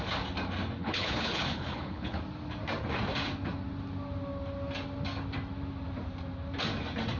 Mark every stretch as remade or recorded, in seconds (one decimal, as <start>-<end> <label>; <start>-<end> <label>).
0.0-0.8 recorded; 0.8-2.2 remade; 2.2-7.2 recorded